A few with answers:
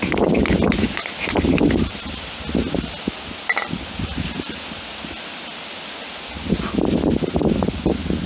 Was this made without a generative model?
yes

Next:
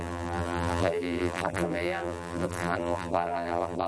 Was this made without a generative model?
no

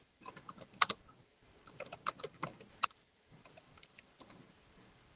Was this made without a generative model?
no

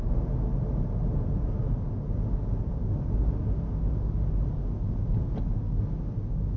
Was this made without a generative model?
yes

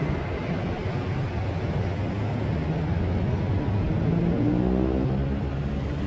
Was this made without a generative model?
yes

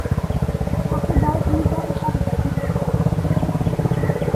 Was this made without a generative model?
yes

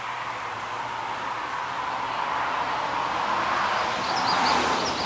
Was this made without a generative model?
no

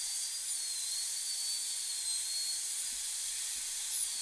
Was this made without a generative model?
yes